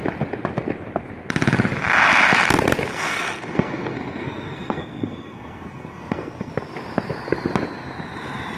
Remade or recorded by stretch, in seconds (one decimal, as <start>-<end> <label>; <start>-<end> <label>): 0.0-2.9 recorded; 2.9-6.5 remade; 6.5-8.6 recorded